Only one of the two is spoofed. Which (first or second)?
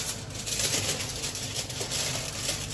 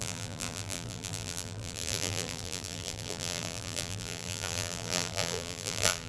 second